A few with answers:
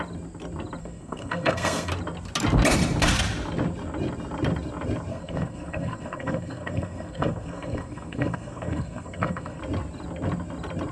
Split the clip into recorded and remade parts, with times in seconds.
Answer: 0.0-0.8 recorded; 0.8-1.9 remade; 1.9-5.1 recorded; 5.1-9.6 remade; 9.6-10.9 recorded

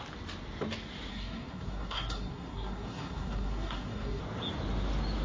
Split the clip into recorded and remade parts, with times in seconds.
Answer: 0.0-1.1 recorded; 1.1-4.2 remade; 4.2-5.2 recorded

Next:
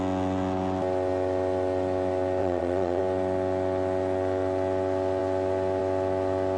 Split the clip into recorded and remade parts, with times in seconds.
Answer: 0.0-2.4 recorded; 2.4-3.0 remade; 3.0-6.6 recorded

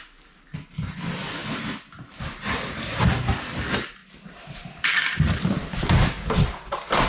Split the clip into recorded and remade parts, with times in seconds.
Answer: 0.0-7.1 recorded